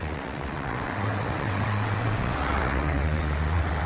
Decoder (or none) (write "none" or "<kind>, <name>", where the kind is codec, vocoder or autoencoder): vocoder, WaveNeXt